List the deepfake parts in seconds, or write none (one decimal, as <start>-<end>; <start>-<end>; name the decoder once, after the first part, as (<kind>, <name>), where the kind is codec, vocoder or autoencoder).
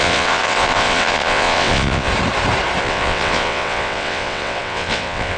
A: 0.0-2.1 (vocoder, WaveNeXt); 2.8-5.4